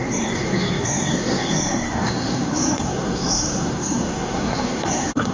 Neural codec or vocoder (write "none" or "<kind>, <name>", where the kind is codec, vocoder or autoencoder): codec, SNAC